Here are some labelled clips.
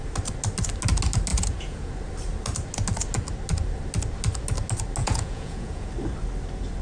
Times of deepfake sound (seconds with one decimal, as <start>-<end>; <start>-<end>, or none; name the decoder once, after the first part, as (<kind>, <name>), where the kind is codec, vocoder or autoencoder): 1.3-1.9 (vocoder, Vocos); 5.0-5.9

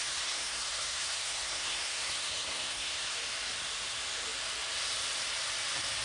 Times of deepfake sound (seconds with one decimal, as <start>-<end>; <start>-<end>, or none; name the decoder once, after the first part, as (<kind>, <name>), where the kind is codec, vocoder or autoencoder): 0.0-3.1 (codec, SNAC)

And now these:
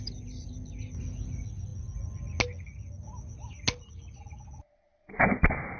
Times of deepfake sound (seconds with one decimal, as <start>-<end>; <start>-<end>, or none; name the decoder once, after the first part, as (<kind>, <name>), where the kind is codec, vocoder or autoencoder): none